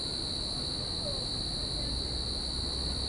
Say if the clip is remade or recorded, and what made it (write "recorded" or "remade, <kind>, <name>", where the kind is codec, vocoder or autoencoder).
recorded